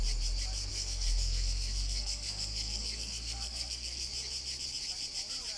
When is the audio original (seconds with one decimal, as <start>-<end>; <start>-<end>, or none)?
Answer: 0.0-0.7; 4.1-5.6